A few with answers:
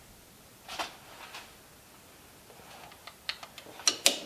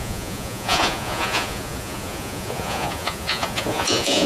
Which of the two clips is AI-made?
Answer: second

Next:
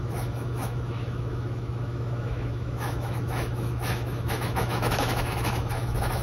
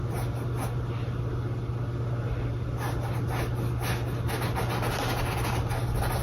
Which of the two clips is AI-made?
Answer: first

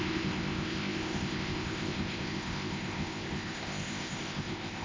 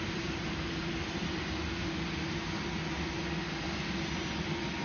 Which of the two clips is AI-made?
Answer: first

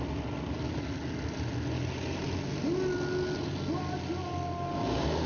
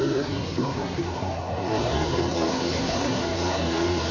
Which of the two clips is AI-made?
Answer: second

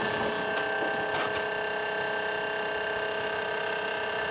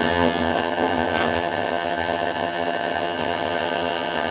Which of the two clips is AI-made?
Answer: second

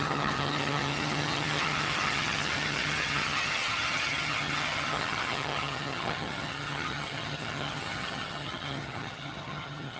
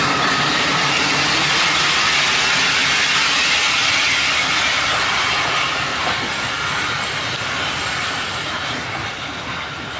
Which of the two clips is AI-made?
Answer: first